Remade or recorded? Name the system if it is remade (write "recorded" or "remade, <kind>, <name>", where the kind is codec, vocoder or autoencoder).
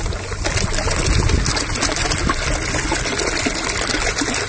recorded